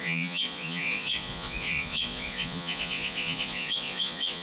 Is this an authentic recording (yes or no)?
no